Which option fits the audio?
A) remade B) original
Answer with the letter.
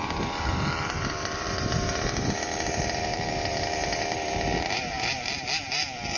A